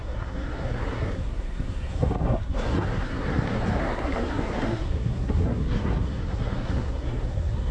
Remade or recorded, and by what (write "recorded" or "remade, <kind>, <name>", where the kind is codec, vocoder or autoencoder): remade, codec, SNAC